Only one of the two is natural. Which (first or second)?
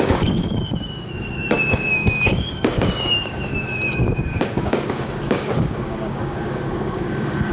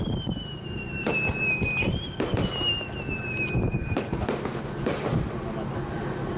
second